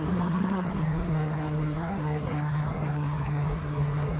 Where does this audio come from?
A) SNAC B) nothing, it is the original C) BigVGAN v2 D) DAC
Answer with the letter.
A